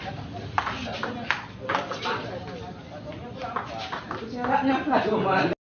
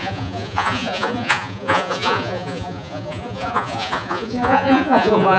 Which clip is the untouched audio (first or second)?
first